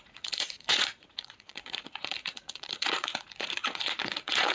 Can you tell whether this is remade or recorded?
remade